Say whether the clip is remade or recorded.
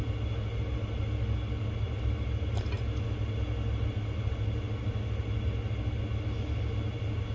recorded